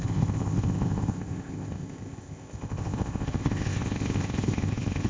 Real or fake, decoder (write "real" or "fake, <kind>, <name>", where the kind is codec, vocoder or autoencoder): fake, codec, ZipCodec